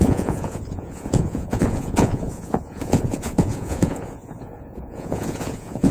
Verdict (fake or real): fake